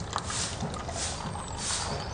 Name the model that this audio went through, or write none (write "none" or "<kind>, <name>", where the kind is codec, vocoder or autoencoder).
none